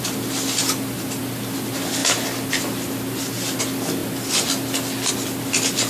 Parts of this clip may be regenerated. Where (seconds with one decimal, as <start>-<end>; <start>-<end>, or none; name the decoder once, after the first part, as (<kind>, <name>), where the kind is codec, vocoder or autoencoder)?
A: 0.6-1.2 (vocoder, BigVGAN v2)